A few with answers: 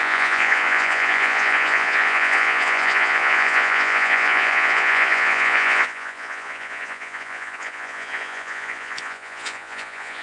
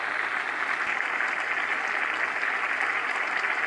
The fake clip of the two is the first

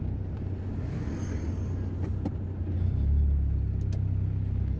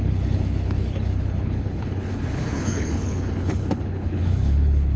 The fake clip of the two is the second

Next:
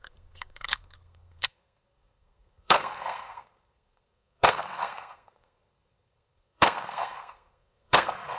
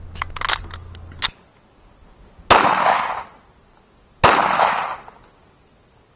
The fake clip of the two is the first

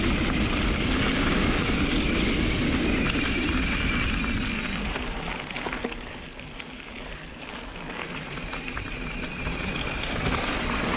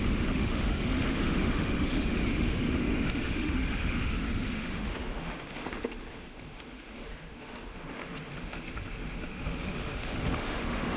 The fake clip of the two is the second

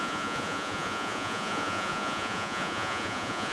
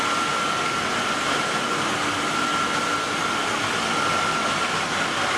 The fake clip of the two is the first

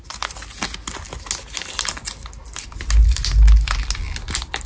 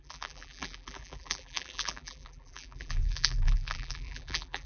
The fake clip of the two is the second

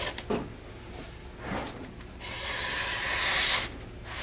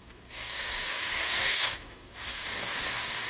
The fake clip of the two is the second